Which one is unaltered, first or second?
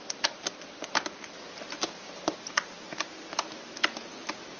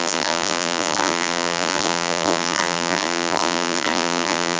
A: first